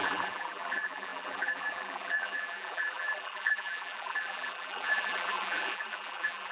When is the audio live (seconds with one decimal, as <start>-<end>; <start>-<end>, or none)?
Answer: none